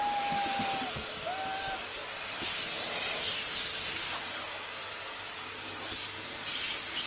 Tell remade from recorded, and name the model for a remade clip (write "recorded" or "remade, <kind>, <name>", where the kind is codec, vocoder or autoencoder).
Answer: recorded